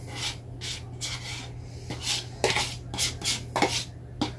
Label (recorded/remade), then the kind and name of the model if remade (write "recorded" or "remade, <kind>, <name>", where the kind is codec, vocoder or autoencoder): recorded